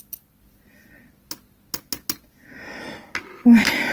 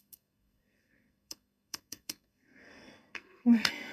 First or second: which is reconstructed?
second